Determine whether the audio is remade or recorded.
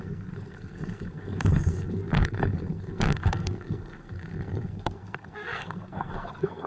remade